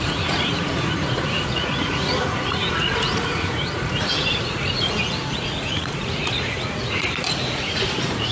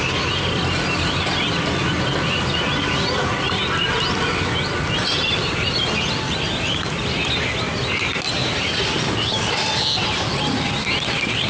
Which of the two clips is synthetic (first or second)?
first